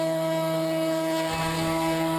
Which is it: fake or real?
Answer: fake